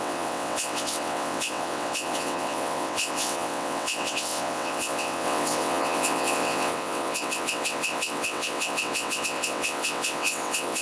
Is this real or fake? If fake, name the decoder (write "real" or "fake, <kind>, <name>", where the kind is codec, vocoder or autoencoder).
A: fake, vocoder, WaveNeXt